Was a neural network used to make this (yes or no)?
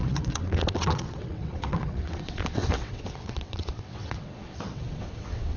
yes